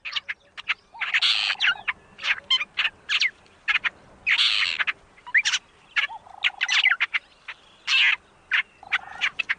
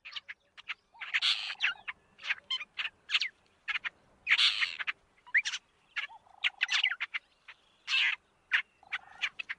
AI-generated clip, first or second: second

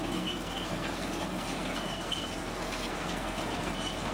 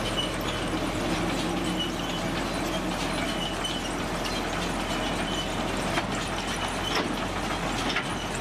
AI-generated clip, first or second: first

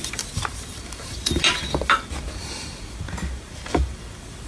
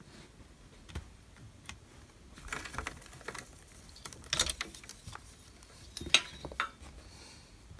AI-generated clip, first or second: first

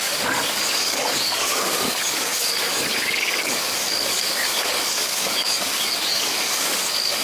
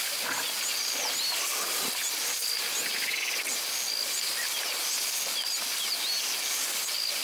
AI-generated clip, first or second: first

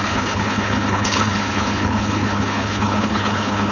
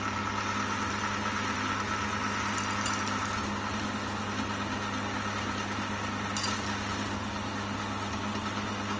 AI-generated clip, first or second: first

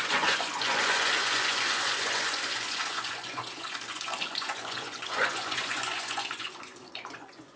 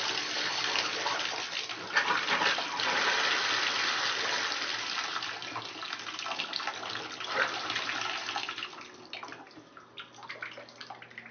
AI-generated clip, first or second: first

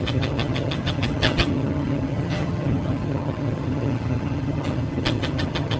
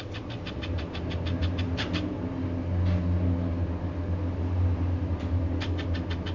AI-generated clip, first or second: first